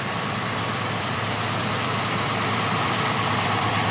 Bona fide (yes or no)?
no